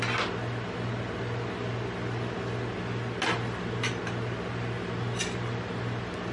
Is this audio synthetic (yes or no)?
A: no